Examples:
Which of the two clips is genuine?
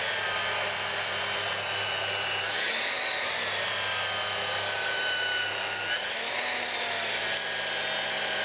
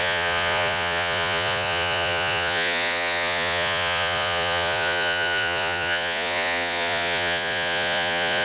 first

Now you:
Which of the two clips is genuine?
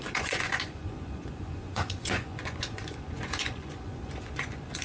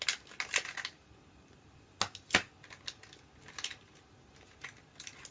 second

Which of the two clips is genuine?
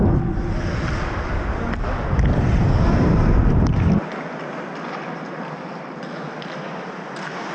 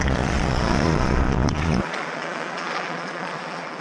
first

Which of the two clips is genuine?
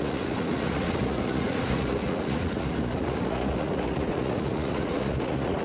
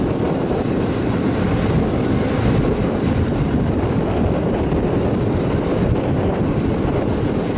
second